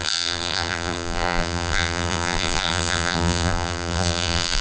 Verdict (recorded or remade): remade